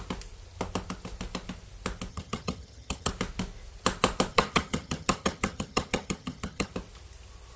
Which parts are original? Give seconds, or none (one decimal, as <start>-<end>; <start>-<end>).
0.0-2.1; 3.1-4.3; 6.7-7.6